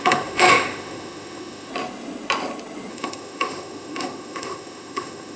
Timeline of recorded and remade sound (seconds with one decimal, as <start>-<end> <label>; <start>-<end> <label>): 0.0-1.7 remade; 1.7-2.9 recorded; 2.9-5.4 remade